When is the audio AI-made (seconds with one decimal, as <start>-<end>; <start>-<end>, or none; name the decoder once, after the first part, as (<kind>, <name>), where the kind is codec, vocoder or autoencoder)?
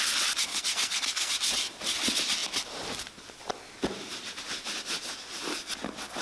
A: 0.5-1.3 (codec, SNAC)